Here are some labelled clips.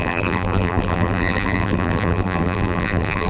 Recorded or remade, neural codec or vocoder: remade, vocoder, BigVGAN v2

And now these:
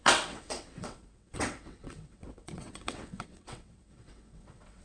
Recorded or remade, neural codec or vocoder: remade, vocoder, WaveNeXt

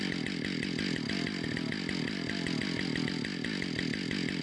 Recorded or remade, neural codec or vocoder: recorded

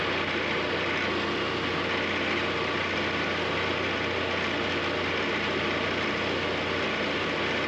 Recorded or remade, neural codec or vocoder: recorded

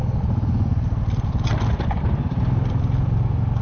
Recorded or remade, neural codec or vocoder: remade, vocoder, BigVGAN v2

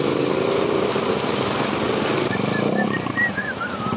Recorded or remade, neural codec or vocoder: remade, vocoder, BigVGAN v2